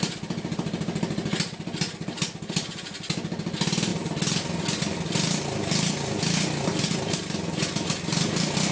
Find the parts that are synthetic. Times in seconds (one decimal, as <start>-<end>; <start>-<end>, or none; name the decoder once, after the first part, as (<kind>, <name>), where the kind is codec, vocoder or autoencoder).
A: none